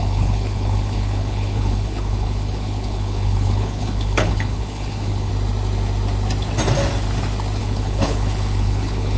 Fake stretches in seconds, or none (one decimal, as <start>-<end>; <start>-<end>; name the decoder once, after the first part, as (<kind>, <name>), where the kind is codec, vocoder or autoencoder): 0.0-5.3 (codec, HILCodec); 7.6-9.2